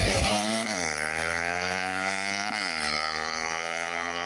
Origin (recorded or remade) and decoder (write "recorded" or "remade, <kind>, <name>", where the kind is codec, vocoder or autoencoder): remade, codec, SNAC